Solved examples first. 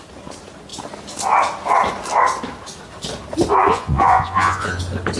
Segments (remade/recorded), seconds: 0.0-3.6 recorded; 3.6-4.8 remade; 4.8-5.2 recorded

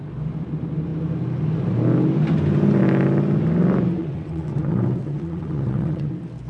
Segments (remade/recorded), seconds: 0.0-4.0 recorded; 4.0-6.1 remade; 6.1-6.5 recorded

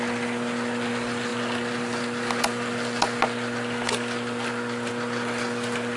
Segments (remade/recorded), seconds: 0.0-6.0 recorded

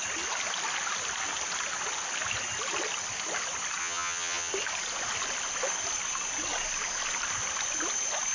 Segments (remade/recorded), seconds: 0.0-3.8 recorded; 3.8-4.5 remade; 4.5-8.3 recorded